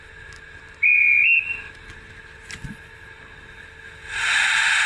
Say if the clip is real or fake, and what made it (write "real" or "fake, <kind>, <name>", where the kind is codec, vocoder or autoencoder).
real